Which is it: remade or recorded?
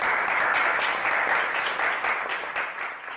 remade